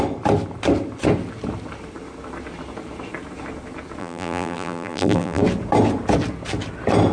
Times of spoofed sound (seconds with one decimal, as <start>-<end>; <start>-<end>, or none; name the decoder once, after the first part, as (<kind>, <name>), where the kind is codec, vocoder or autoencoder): 4.0-5.4 (vocoder, BigVGAN v2)